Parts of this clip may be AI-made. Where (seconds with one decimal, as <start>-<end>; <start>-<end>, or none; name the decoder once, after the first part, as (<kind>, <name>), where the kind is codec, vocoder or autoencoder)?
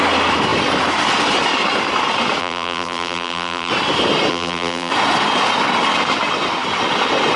2.4-3.7 (vocoder, BigVGAN v2); 4.3-4.9